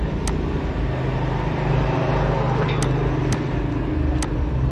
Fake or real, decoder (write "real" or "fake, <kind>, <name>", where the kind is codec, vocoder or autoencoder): real